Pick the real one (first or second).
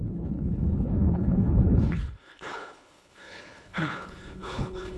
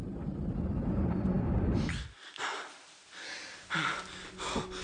second